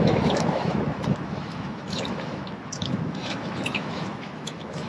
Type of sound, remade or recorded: remade